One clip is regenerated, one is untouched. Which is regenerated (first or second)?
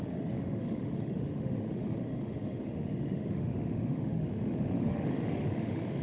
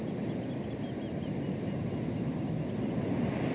first